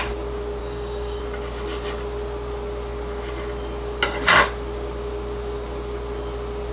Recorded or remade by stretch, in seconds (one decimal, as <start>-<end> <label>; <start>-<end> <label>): 0.0-0.6 recorded; 0.6-1.2 remade; 1.2-6.7 recorded